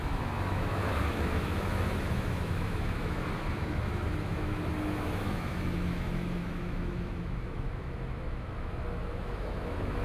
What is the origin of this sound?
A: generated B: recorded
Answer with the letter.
A